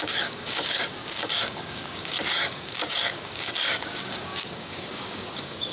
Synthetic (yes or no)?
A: yes